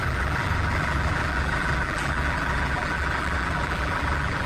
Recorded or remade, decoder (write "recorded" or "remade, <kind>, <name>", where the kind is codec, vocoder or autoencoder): remade, vocoder, BigVGAN v2